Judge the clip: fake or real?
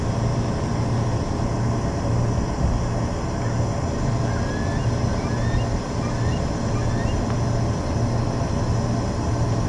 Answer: real